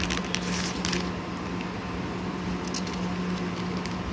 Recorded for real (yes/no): yes